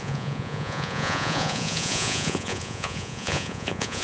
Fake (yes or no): yes